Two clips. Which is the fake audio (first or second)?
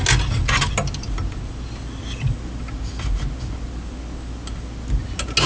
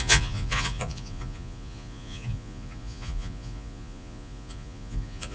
second